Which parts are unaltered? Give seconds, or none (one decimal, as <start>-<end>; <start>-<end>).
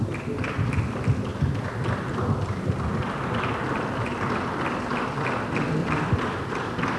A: 0.0-5.8